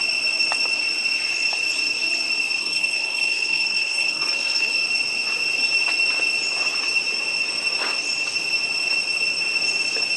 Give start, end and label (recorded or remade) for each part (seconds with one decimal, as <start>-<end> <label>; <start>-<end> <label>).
0.0-2.6 recorded; 2.6-4.7 remade; 4.7-10.2 recorded